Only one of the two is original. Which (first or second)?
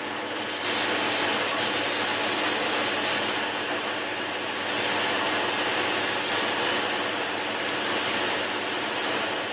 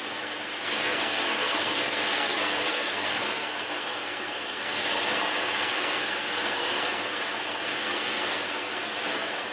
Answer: first